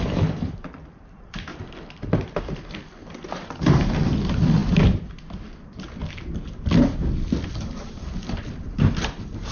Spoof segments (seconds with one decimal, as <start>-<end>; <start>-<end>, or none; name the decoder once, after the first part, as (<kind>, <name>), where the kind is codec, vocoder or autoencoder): 0.0-1.5 (vocoder, BigVGAN v2); 2.5-9.5